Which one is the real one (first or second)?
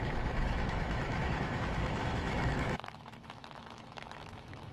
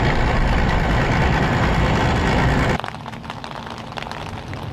second